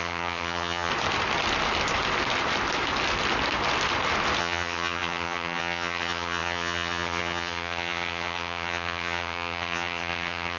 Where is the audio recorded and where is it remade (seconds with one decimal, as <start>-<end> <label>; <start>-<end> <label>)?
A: 0.0-0.9 remade; 0.9-4.4 recorded; 4.4-10.6 remade